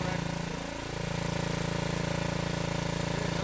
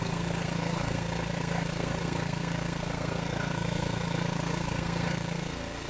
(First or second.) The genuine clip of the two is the first